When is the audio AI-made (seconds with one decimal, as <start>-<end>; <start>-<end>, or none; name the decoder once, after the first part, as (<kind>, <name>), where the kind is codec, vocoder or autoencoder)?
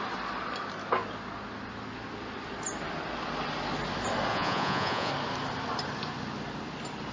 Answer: 4.3-5.1 (vocoder, Vocos)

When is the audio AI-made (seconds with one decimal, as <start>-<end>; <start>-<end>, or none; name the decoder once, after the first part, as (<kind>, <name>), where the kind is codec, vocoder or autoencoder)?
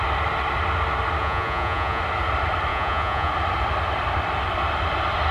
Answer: 1.2-2.0 (vocoder, Vocos); 2.7-3.3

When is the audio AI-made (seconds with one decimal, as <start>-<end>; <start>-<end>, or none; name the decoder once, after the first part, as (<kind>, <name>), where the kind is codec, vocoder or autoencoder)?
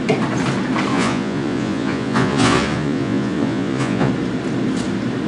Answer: 0.9-4.1 (vocoder, Vocos)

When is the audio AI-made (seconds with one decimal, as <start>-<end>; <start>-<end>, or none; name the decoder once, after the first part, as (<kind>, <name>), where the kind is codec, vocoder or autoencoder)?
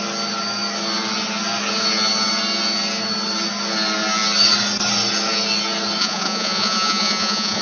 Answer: 6.0-7.6 (vocoder, Vocos)